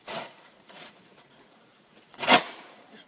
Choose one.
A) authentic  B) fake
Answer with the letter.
B